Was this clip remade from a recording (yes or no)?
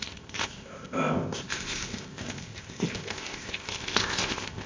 yes